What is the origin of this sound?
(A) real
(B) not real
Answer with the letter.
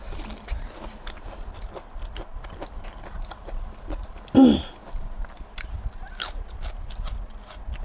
A